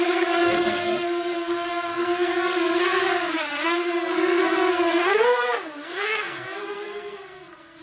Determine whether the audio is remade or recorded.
remade